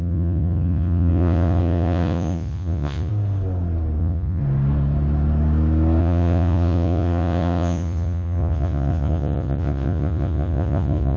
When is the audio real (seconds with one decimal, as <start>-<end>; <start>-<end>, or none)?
3.1-4.0; 4.4-6.0